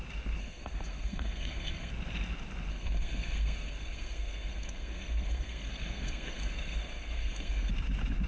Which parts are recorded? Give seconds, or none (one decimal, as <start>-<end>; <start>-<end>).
0.0-0.4; 1.9-2.7; 7.7-8.3

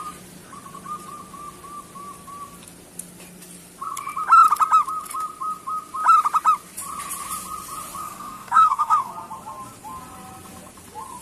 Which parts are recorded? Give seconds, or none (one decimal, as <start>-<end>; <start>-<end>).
0.0-8.0; 9.1-11.2

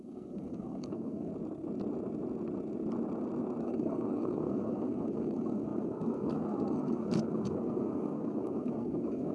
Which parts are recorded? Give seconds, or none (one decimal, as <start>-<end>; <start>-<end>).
1.3-3.6

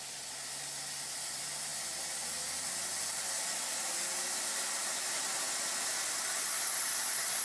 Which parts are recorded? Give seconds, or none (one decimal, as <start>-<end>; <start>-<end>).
0.0-7.4

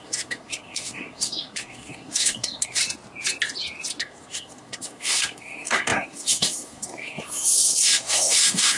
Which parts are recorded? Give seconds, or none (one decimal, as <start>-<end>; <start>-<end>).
2.8-4.0

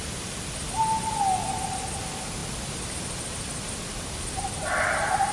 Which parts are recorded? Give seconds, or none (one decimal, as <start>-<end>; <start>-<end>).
0.0-5.3